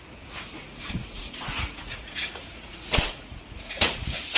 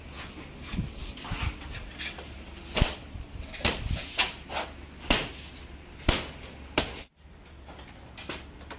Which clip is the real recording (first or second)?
second